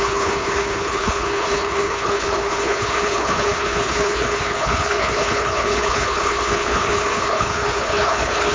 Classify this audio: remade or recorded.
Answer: remade